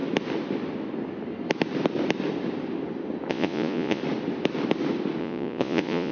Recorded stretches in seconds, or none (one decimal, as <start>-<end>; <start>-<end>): 0.0-3.3; 4.0-5.2